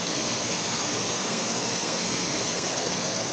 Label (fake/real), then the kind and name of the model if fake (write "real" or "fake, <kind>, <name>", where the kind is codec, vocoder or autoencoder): fake, codec, SNAC